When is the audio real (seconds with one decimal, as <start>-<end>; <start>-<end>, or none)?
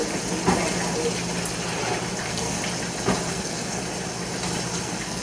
0.0-2.2; 2.6-3.3; 3.8-4.8